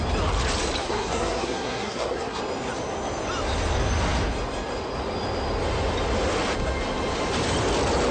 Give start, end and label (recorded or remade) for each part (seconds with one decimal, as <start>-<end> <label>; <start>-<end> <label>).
0.0-0.8 recorded; 0.8-2.4 remade; 2.4-8.1 recorded